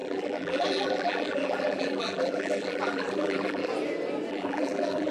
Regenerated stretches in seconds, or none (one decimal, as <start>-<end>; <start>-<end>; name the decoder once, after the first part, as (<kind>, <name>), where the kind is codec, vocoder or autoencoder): 0.0-3.7 (vocoder, BigVGAN v2); 4.3-5.1